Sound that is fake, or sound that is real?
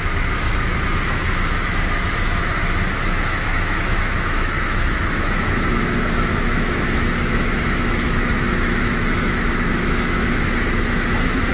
fake